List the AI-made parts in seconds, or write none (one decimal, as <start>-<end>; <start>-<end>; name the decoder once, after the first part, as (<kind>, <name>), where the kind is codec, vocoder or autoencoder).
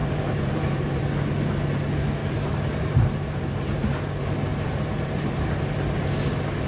0.0-1.0 (vocoder, BigVGAN v2); 2.2-4.1; 4.5-5.5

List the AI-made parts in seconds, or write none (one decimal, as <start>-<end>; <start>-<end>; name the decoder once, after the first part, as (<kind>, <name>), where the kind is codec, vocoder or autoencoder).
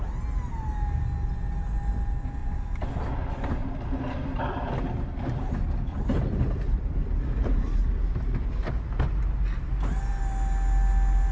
2.4-2.9 (vocoder, BigVGAN v2); 3.6-4.6; 5.9-7.3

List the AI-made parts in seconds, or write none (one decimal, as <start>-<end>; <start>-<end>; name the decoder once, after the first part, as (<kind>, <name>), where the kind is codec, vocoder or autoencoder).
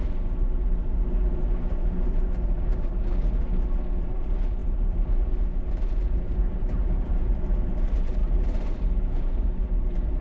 0.0-3.2 (vocoder, BigVGAN v2); 4.0-10.2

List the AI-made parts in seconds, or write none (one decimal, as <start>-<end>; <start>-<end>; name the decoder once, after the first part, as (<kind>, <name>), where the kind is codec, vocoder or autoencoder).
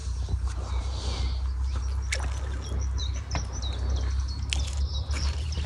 3.0-3.6 (vocoder, BigVGAN v2); 4.7-5.7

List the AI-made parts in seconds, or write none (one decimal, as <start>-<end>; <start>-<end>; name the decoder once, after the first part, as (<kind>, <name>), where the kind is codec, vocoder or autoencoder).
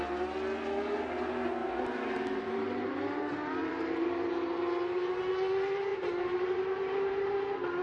1.6-3.0 (vocoder, BigVGAN v2); 3.6-4.1; 5.9-7.8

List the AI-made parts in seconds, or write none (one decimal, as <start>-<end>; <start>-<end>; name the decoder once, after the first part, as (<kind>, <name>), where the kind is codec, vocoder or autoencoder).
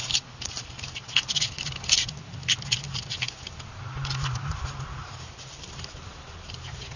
5.0-6.1 (vocoder, BigVGAN v2)